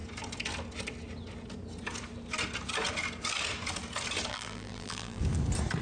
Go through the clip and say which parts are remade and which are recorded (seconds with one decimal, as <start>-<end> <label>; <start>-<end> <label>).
0.0-4.3 recorded; 4.3-5.2 remade; 5.2-5.8 recorded